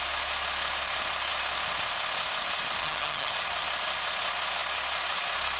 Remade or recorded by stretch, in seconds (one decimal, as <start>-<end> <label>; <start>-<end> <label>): 0.0-2.8 recorded; 2.8-3.3 remade; 3.3-5.6 recorded